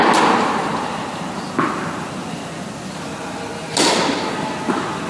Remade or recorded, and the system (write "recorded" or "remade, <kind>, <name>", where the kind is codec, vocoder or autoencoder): recorded